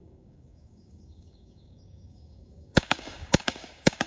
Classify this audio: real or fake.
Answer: fake